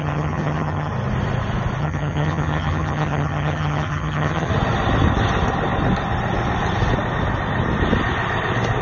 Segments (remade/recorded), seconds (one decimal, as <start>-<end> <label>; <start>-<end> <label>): 0.0-0.9 remade; 0.9-1.8 recorded; 1.8-4.5 remade; 4.5-8.8 recorded